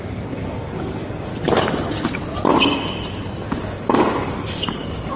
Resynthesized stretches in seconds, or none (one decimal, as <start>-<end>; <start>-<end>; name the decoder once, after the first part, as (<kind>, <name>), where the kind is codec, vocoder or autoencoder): 0.0-1.3 (codec, DAC); 3.6-5.2